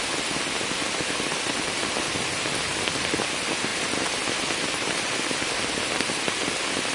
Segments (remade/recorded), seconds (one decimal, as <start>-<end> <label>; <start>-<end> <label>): 0.0-3.7 recorded; 3.7-5.1 remade; 5.1-6.9 recorded